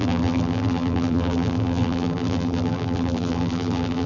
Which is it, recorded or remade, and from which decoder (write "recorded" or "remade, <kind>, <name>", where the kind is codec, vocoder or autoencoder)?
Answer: remade, vocoder, BigVGAN v2